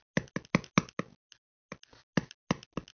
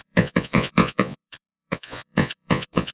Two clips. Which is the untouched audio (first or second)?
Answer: first